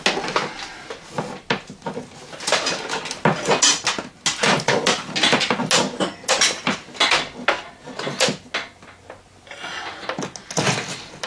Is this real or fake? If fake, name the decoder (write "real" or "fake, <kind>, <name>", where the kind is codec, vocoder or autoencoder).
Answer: real